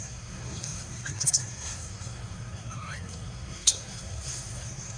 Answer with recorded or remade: remade